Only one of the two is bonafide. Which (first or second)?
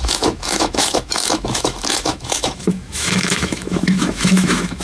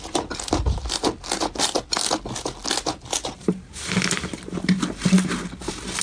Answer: second